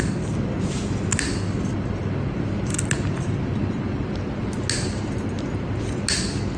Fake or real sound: real